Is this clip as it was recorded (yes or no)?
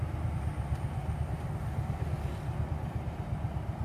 yes